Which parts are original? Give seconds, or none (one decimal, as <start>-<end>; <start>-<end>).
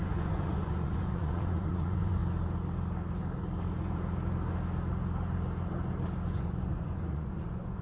2.2-6.3